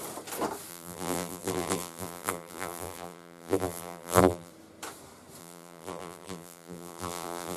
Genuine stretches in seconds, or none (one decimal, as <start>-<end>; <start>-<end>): 0.0-0.7; 4.5-5.4